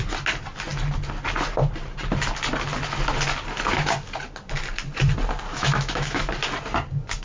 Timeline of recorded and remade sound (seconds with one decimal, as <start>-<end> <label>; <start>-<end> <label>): 0.0-5.5 recorded; 5.5-6.3 remade; 6.3-7.2 recorded